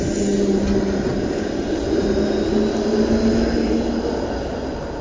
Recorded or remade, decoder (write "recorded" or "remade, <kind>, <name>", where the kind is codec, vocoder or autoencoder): recorded